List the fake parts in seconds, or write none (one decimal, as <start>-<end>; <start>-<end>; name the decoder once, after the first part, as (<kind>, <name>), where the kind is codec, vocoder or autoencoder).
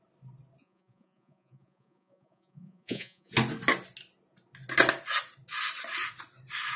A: 0.6-3.3 (vocoder, Vocos)